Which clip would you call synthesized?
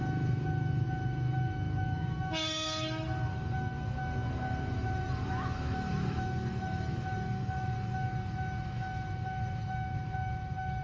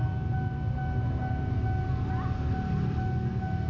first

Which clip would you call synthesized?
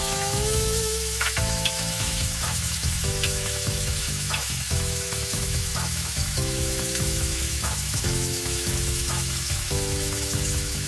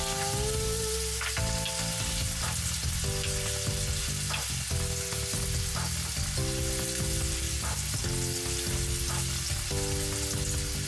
first